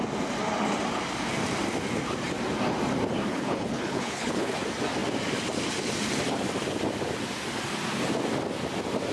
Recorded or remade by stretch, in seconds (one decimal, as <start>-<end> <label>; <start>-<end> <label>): 0.0-3.3 recorded; 3.3-4.6 remade; 4.6-9.1 recorded